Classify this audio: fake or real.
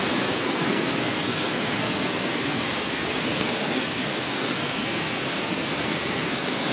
fake